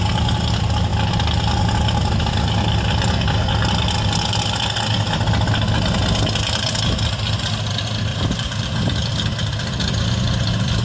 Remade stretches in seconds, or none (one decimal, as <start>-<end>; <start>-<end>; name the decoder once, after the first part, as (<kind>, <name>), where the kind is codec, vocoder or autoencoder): 8.1-8.7 (vocoder, BigVGAN v2)